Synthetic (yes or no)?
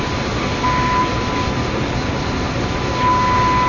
no